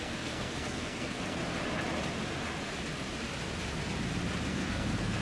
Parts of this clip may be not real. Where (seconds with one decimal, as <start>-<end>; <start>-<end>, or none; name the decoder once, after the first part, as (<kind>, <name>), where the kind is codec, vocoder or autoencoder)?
0.0-1.4 (codec, SNAC); 4.5-5.2